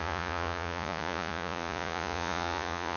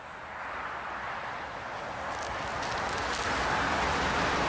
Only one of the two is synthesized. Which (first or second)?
first